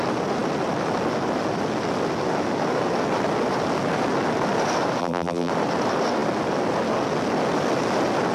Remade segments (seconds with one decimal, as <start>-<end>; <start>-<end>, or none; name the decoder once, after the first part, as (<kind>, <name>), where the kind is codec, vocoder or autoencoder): 5.0-5.5 (vocoder, BigVGAN v2)